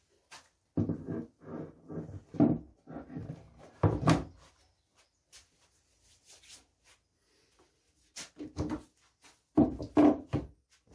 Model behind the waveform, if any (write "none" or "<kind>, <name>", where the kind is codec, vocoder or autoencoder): none